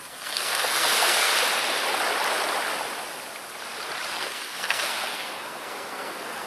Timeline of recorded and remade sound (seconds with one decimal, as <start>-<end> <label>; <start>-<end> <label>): 0.0-1.3 remade; 1.3-4.1 recorded; 4.1-6.5 remade